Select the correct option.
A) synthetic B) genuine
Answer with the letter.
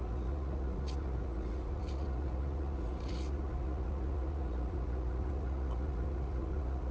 A